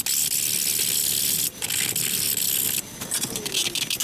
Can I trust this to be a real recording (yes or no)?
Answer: yes